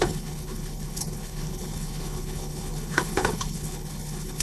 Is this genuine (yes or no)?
no